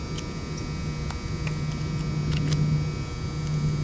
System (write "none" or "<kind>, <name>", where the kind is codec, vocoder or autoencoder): none